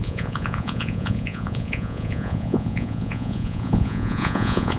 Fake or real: fake